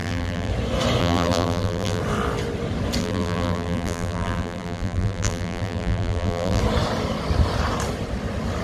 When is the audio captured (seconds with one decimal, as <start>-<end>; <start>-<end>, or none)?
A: 0.5-1.0; 2.0-3.0; 6.6-8.6